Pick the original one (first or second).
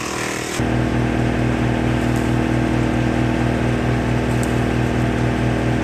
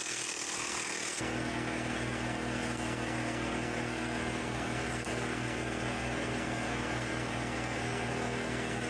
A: first